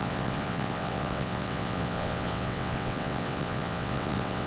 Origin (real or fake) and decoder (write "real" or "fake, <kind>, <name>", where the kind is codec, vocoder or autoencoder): fake, vocoder, WaveNeXt